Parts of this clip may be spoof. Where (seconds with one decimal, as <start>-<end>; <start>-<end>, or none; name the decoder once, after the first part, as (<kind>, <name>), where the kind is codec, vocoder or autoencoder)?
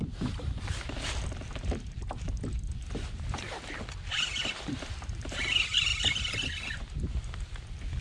none